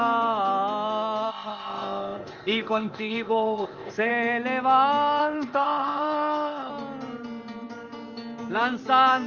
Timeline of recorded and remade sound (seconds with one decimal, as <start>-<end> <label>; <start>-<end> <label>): 0.0-1.3 recorded; 1.3-4.1 remade; 4.1-5.2 recorded; 5.2-6.7 remade; 6.7-9.3 recorded